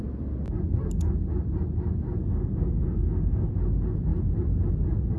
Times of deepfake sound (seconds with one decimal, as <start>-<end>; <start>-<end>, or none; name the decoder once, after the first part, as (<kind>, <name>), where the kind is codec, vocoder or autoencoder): 2.2-3.5 (codec, SNAC)